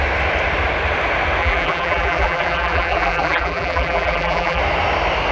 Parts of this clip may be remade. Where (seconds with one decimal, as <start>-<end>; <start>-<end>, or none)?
1.4-4.6